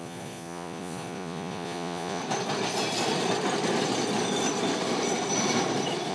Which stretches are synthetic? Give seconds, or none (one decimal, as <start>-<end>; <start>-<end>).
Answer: 0.0-2.2